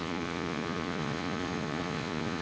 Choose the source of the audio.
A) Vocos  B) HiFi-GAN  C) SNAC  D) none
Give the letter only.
A